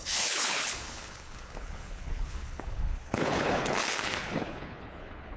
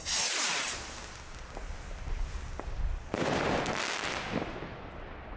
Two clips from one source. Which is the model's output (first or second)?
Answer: first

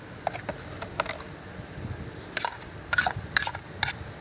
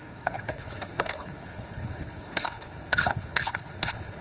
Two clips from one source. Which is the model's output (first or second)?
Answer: second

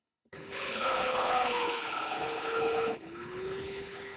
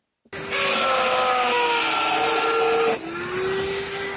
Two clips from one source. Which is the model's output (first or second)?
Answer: first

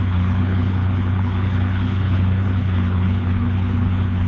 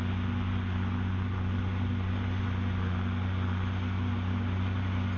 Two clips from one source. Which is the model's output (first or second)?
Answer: first